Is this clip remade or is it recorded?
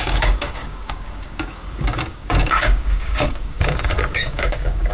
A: remade